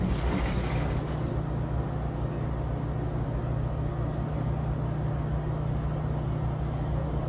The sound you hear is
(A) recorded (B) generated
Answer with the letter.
A